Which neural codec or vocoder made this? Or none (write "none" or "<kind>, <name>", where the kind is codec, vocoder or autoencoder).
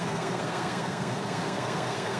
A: codec, SNAC